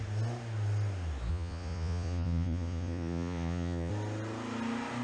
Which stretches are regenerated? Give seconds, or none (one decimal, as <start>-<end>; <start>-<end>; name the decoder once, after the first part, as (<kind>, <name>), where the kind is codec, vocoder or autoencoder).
1.3-3.9 (vocoder, Vocos)